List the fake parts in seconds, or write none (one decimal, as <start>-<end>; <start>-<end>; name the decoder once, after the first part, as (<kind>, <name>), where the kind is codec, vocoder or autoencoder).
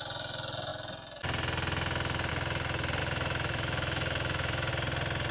3.0-4.7 (autoencoder, DAC-VAE)